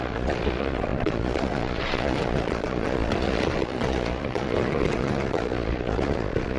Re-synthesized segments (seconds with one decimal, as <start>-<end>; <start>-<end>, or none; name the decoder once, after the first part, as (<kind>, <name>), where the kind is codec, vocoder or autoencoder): 0.0-6.6 (vocoder, Vocos)